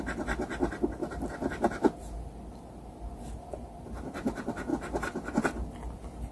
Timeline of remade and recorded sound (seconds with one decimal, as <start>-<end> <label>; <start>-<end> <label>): 0.0-6.3 recorded